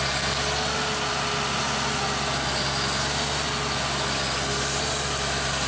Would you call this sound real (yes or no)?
yes